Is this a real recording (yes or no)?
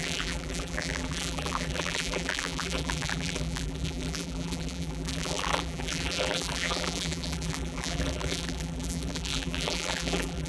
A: no